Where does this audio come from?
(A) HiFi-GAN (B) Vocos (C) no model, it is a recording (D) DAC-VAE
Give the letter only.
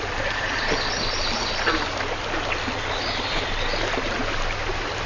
C